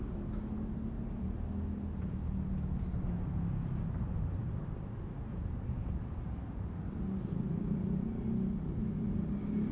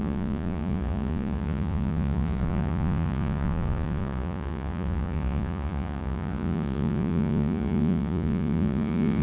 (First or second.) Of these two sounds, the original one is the first